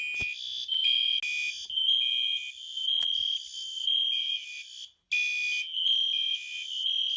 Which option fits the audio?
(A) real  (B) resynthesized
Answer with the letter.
A